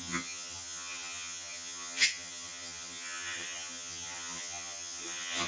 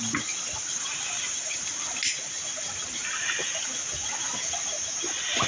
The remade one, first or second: first